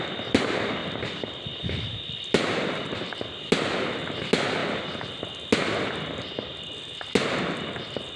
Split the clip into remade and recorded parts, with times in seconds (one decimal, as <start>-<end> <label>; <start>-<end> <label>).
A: 0.0-0.8 recorded; 0.8-1.6 remade; 1.6-8.2 recorded